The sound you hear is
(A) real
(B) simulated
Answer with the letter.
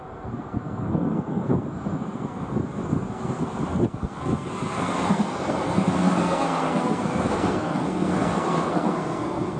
B